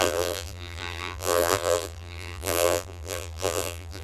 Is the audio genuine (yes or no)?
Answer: no